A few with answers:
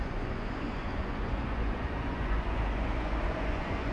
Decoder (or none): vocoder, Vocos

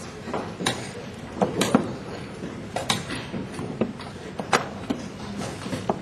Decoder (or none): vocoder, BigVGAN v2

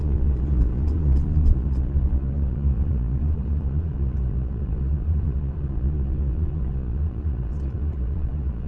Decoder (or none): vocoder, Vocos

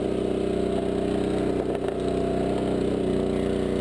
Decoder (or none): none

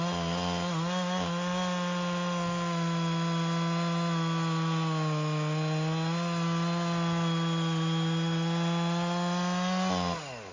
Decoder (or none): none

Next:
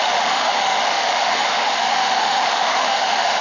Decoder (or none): autoencoder, DAC-VAE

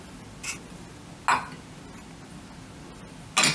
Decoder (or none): none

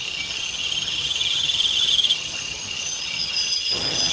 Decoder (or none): vocoder, HiFi-GAN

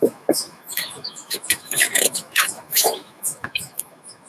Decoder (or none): autoencoder, DAC-VAE